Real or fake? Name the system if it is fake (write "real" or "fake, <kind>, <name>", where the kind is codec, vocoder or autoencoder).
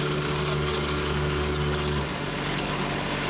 fake, codec, DAC